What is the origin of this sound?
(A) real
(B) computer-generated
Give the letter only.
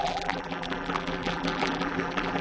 B